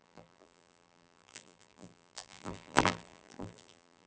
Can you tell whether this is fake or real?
fake